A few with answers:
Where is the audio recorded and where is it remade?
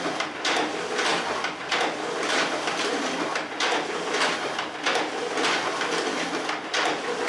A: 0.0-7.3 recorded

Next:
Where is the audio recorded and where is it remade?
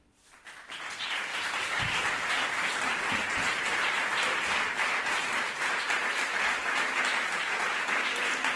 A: 0.0-1.3 recorded; 1.3-2.3 remade; 2.3-3.7 recorded; 3.7-5.2 remade; 5.2-8.6 recorded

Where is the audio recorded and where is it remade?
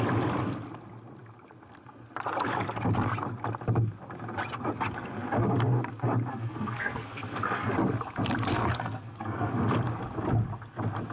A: 0.0-6.3 recorded; 6.3-7.7 remade; 7.7-8.5 recorded; 8.5-9.5 remade; 9.5-11.1 recorded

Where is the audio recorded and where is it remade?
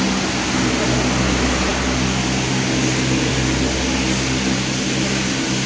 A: 0.0-5.7 recorded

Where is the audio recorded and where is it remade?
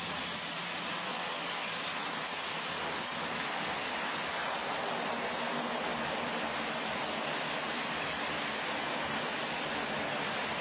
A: 0.0-1.1 recorded; 1.1-1.8 remade; 1.8-10.6 recorded